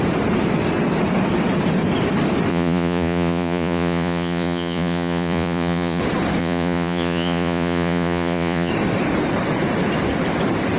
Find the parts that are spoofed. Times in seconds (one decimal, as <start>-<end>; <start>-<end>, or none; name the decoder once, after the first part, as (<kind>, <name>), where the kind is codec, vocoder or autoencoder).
2.5-6.0 (vocoder, Vocos); 6.4-8.7